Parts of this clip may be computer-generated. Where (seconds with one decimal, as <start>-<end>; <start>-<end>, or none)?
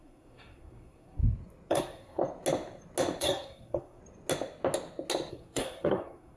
0.0-1.2; 1.7-2.2; 3.2-4.0; 5.3-6.4